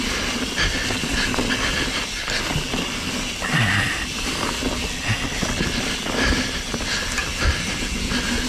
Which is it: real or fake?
real